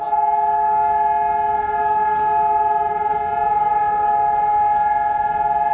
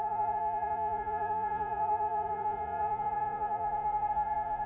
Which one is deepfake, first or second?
second